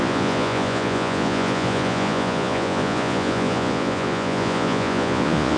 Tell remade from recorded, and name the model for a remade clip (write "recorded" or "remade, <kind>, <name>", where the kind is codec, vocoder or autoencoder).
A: remade, vocoder, Vocos